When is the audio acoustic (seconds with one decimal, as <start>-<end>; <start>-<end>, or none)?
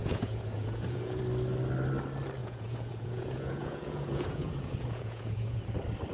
1.2-2.4; 5.6-6.1